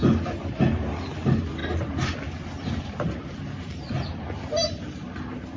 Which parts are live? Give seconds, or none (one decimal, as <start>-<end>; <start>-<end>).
0.0-5.6